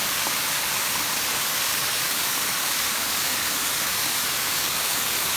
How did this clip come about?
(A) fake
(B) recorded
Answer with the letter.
A